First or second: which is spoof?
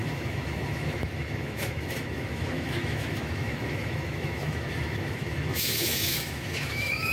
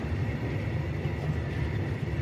first